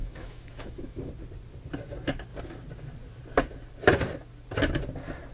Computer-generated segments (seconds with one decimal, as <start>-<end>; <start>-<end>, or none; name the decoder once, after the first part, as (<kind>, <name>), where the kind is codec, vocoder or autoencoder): 0.0-1.1 (autoencoder, DAC-VAE)